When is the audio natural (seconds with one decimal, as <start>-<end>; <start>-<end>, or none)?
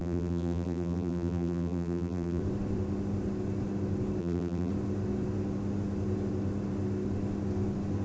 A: 2.4-4.2; 4.7-8.0